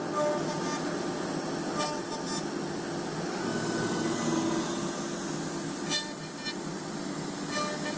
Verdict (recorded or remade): recorded